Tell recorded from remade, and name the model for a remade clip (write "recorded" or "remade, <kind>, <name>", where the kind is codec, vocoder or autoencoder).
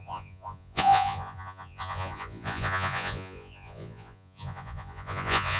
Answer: remade, vocoder, Vocos